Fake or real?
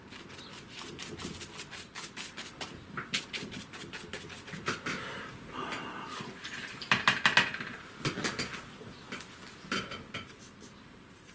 real